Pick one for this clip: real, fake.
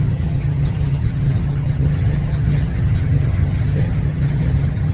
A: fake